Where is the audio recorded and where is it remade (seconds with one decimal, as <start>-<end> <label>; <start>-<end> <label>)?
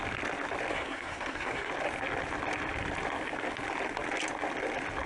0.0-0.7 recorded; 0.7-1.7 remade; 1.7-5.1 recorded